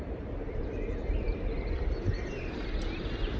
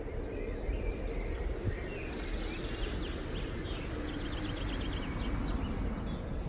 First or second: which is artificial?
first